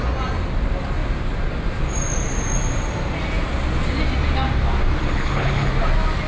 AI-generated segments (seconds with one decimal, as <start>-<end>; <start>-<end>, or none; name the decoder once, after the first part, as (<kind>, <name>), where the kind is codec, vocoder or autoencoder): 5.0-5.7 (codec, HILCodec)